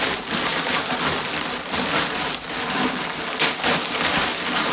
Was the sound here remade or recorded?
recorded